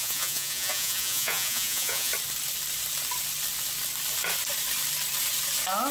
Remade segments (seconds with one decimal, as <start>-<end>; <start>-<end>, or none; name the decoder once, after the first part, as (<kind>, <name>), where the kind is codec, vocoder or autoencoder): 0.0-2.1 (vocoder, Vocos)